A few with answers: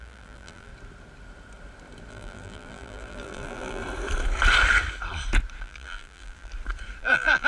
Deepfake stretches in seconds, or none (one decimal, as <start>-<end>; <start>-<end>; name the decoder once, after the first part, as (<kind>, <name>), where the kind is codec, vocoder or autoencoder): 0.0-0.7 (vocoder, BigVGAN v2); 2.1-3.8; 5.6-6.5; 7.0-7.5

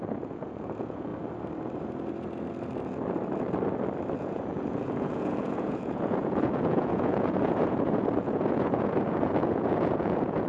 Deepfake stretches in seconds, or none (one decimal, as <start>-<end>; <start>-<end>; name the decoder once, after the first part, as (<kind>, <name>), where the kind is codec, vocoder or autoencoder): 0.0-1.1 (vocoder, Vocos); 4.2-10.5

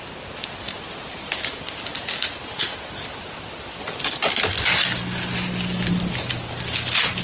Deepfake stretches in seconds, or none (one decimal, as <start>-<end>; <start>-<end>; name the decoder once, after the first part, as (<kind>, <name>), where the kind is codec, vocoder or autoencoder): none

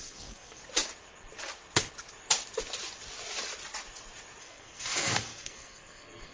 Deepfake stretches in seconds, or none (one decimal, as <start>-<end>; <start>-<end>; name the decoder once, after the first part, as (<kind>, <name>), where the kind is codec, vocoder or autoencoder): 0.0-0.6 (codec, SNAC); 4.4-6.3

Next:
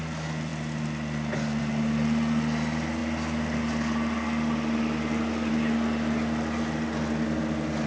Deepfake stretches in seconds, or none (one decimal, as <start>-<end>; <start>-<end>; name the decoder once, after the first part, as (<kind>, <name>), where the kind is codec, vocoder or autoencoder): none

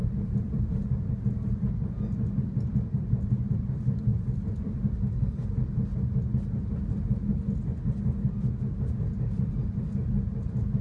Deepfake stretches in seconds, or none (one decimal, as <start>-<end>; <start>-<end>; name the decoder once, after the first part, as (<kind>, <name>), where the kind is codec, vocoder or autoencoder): 0.0-1.1 (vocoder, BigVGAN v2); 4.1-5.3

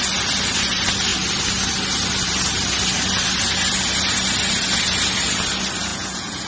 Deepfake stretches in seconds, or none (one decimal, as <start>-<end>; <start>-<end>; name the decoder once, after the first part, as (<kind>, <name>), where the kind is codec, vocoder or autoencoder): 5.9-6.5 (vocoder, Vocos)

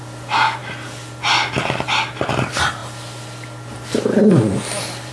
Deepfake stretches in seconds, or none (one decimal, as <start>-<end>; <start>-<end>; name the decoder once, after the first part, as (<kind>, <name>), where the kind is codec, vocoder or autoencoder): none